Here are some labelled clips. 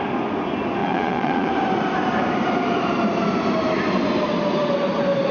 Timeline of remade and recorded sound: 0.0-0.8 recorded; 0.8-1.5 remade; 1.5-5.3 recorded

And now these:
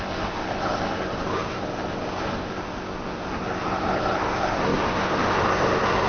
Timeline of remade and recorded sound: 0.0-6.1 remade

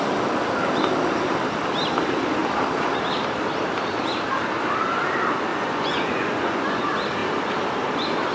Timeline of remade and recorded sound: 0.0-5.5 recorded; 5.5-6.8 remade; 6.8-8.3 recorded

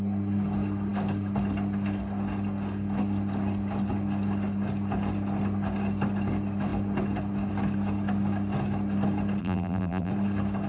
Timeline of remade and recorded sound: 0.0-9.4 recorded; 9.4-10.1 remade; 10.1-10.7 recorded

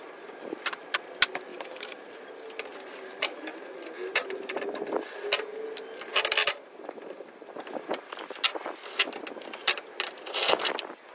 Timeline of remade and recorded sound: 0.0-1.5 recorded; 1.5-2.2 remade; 2.2-3.5 recorded; 3.5-4.8 remade; 4.8-11.1 recorded